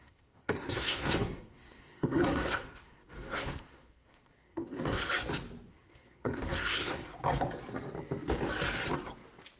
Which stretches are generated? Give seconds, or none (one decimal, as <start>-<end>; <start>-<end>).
0.0-5.0; 5.7-7.0